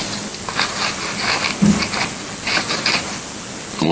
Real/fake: real